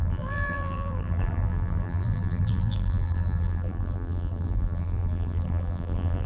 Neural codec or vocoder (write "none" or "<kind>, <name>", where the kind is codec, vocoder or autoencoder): vocoder, BigVGAN v2